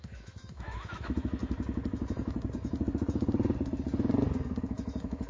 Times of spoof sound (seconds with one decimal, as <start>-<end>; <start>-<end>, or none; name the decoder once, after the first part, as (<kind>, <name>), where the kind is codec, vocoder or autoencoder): 0.0-1.4 (autoencoder, DAC-VAE); 4.6-5.3

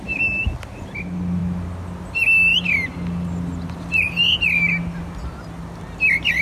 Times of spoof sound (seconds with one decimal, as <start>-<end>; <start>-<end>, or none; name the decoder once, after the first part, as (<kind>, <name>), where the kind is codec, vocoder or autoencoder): none

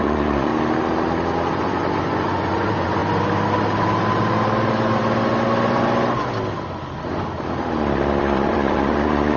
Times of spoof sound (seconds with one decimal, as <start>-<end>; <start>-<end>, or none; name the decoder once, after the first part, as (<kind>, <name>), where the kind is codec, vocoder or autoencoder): 0.0-0.5 (vocoder, Vocos); 1.5-3.0; 8.2-9.4

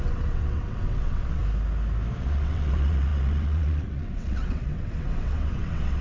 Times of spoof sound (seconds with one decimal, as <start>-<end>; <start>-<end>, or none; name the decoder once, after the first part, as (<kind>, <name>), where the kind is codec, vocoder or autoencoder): 0.0-1.4 (vocoder, WaveNeXt); 2.2-6.0

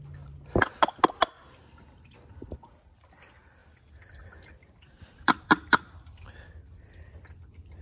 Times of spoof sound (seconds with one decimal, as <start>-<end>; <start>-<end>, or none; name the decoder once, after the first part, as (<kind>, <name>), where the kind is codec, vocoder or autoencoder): 3.6-6.4 (vocoder, BigVGAN v2)

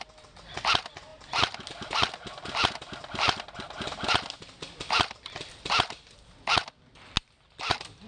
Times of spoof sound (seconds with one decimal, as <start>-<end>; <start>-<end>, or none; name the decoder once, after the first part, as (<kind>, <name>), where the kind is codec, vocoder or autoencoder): none

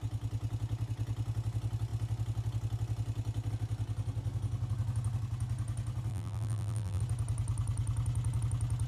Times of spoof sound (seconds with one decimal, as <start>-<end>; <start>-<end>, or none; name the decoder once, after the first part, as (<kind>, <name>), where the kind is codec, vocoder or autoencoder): 6.1-7.0 (vocoder, BigVGAN v2)

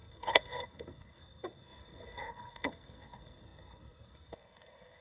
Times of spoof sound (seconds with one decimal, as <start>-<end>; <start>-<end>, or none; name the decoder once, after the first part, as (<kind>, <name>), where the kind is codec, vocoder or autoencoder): 0.0-5.0 (codec, SNAC)